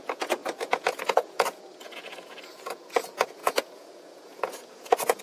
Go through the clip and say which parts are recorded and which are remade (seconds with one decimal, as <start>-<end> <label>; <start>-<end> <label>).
0.0-5.2 remade